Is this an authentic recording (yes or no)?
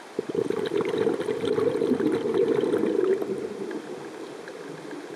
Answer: yes